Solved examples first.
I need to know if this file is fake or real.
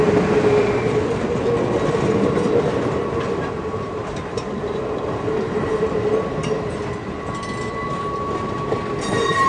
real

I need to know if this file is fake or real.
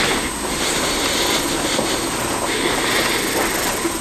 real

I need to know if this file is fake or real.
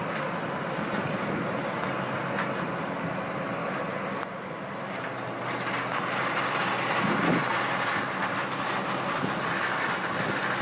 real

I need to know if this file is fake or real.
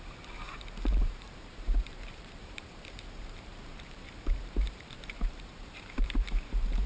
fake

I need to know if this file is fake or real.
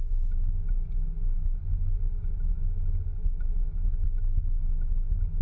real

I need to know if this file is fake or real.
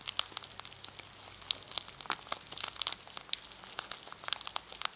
real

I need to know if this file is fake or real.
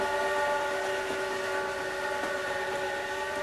real